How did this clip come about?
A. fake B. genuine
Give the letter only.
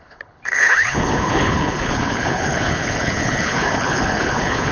A